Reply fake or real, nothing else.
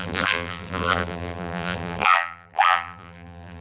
fake